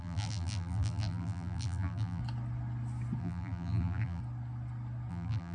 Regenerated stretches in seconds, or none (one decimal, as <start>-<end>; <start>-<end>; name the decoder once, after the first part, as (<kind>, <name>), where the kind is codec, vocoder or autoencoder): 0.0-2.2 (vocoder, BigVGAN v2); 3.2-4.2; 5.1-5.5